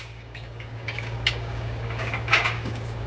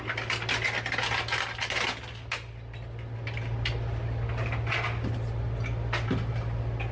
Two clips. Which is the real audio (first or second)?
second